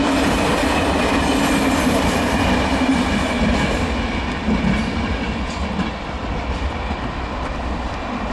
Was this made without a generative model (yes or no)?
yes